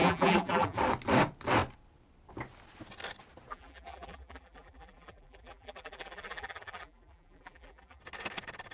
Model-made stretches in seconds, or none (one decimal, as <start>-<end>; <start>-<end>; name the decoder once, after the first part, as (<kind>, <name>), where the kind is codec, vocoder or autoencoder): 0.0-0.8 (vocoder, BigVGAN v2); 3.5-8.0